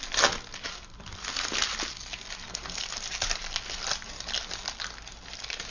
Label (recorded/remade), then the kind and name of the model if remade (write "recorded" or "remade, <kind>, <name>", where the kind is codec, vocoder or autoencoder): recorded